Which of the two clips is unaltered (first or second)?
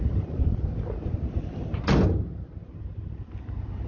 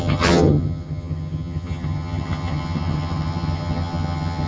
first